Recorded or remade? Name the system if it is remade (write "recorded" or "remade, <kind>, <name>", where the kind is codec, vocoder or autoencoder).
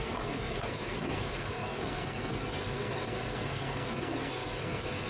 remade, codec, SNAC